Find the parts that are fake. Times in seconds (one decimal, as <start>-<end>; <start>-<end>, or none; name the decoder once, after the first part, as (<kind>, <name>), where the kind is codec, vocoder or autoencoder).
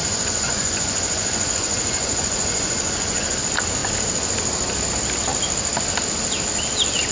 0.0-3.4 (vocoder, Vocos)